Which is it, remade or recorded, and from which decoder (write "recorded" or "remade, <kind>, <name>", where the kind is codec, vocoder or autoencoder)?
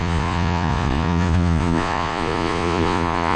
remade, vocoder, Vocos